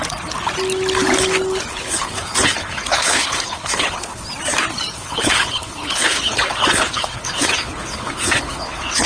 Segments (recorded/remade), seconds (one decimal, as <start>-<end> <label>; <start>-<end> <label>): 0.0-1.7 recorded; 1.7-4.2 remade; 4.2-4.9 recorded; 4.9-9.1 remade